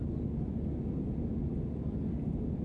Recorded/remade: recorded